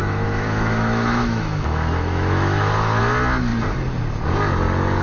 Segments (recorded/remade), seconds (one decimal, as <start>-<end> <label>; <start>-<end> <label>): 0.0-3.0 remade; 3.0-5.0 recorded